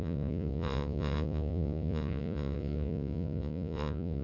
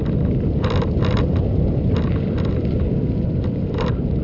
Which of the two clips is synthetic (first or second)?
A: first